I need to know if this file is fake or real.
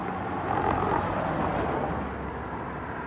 real